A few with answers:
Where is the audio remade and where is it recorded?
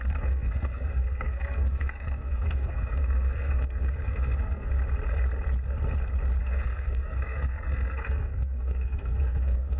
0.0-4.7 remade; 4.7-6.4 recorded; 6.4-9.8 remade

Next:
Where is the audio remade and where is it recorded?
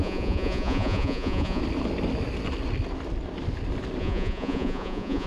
0.0-1.6 remade; 1.6-4.0 recorded; 4.0-5.3 remade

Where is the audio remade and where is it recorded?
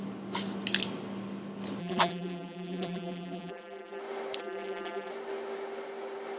0.0-1.8 recorded; 1.8-4.0 remade; 4.0-4.4 recorded; 4.4-5.1 remade; 5.1-6.4 recorded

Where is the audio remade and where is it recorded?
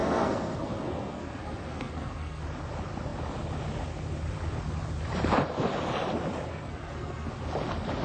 0.0-2.4 remade; 2.4-6.5 recorded; 6.5-7.3 remade; 7.3-8.0 recorded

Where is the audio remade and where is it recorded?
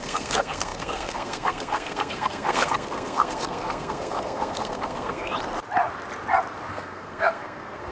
0.0-5.3 remade; 5.3-6.7 recorded; 6.7-7.9 remade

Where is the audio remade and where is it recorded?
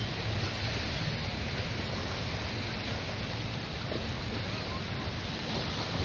0.0-1.2 recorded; 1.2-2.0 remade; 2.0-6.0 recorded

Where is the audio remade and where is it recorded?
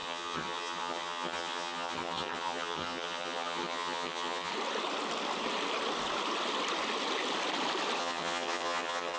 0.0-4.5 remade; 4.5-8.0 recorded; 8.0-9.2 remade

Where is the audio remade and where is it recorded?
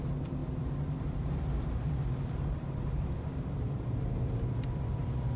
0.0-5.4 remade